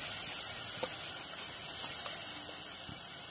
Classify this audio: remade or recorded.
recorded